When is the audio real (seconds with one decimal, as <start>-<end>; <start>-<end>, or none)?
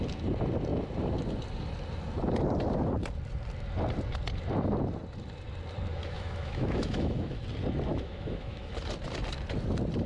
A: 0.0-5.9; 7.4-7.9; 8.7-10.1